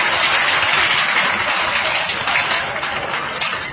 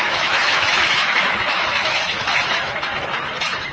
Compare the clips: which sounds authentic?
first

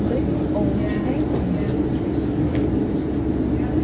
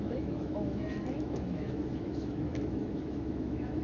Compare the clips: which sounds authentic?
first